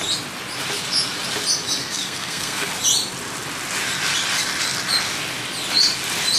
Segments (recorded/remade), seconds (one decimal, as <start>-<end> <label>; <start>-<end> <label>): 0.0-1.8 recorded; 1.8-2.7 remade; 2.7-6.4 recorded